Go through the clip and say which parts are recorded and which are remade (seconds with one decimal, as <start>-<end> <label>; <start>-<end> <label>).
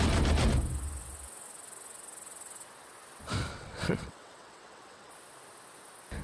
0.0-3.5 recorded; 3.5-5.1 remade; 5.1-6.2 recorded